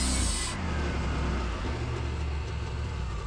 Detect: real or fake real